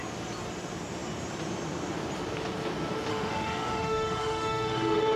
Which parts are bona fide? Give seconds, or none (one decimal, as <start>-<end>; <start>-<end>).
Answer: 0.0-3.1